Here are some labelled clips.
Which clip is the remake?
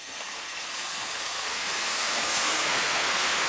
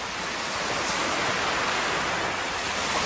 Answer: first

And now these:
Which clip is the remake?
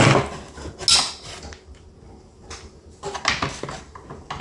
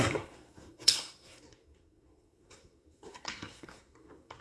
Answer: second